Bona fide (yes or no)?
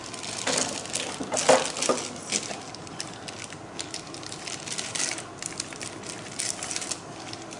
yes